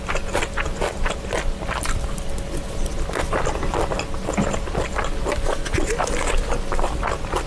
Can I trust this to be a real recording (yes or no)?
yes